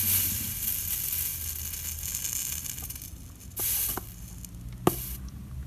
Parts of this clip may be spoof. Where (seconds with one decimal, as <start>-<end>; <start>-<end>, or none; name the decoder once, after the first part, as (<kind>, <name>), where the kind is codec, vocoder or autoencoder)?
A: none